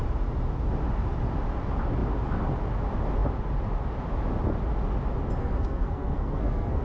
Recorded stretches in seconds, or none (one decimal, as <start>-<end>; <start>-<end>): 0.0-5.4